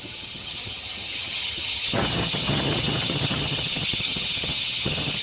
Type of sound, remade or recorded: remade